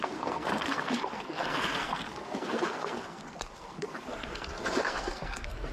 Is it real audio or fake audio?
fake